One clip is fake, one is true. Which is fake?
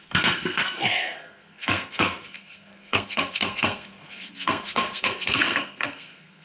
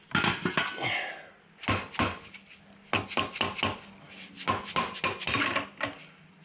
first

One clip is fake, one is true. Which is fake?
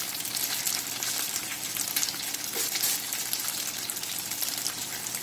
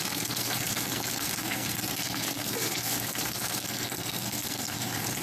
second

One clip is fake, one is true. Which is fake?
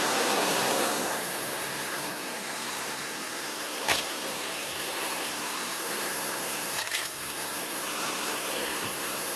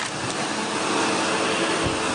first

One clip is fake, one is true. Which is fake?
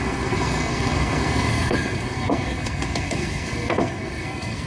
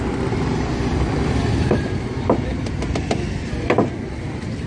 first